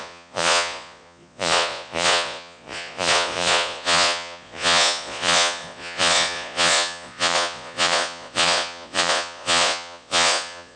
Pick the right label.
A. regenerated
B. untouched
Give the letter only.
A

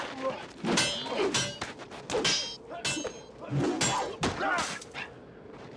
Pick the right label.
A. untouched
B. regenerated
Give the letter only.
A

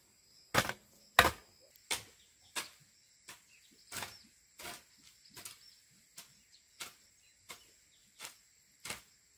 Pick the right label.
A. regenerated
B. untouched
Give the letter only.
B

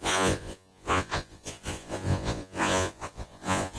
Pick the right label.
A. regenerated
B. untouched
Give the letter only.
A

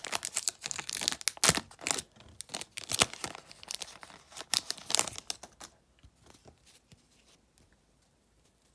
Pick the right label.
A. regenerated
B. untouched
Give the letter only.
B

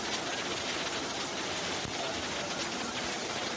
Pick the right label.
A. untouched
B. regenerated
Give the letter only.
A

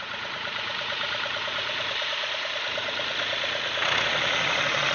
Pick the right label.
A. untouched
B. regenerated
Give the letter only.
B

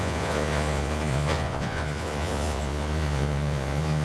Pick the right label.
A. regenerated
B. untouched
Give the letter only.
A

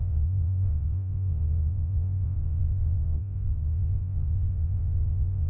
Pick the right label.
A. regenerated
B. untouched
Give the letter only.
A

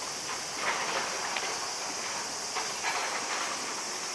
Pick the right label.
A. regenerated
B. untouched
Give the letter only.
B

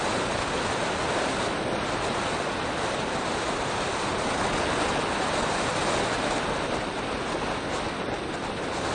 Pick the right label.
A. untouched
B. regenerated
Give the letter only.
A